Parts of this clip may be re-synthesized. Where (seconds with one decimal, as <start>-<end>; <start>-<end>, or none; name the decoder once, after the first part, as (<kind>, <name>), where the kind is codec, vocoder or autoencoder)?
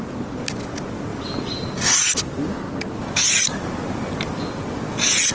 3.5-4.3 (vocoder, BigVGAN v2)